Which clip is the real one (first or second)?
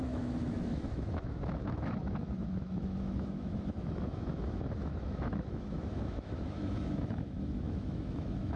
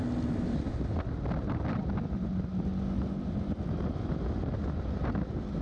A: second